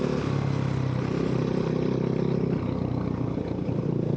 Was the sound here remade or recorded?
recorded